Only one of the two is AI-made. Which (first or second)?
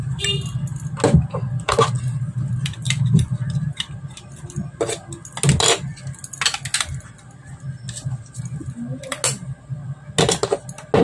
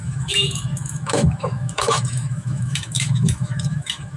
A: second